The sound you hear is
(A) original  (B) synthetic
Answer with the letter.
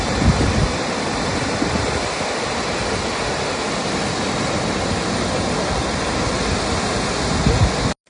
A